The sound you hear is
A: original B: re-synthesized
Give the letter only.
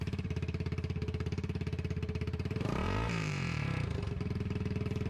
B